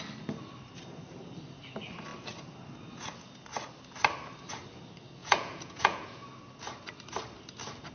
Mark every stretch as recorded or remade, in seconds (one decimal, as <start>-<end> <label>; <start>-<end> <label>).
0.0-5.2 recorded; 5.2-6.2 remade; 6.2-7.9 recorded